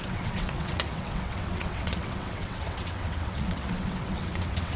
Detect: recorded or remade remade